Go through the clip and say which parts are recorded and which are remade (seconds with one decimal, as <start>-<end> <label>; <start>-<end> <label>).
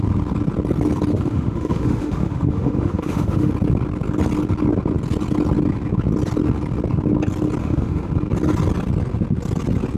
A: 0.0-1.1 recorded; 1.1-3.5 remade; 3.5-7.6 recorded; 7.6-8.1 remade; 8.1-10.0 recorded